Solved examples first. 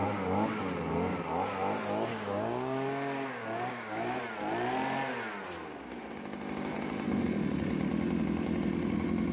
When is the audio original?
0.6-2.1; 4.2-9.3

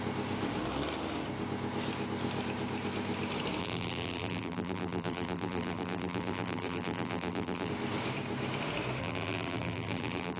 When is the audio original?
0.0-3.6; 7.7-9.0

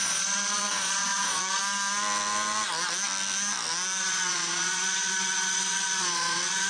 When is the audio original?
1.6-4.0

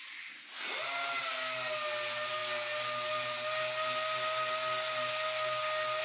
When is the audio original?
0.0-6.0

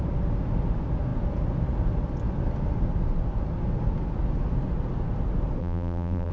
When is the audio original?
0.0-5.6